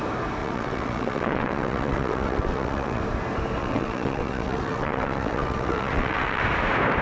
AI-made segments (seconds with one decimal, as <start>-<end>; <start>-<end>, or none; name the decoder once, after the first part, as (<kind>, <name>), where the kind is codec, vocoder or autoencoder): 0.4-3.0 (vocoder, WaveNeXt); 3.6-6.4